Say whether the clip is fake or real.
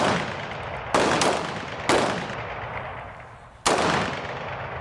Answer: real